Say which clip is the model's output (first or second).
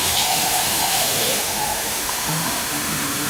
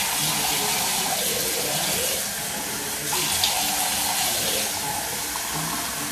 first